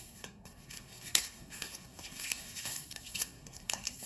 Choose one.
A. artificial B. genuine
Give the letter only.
A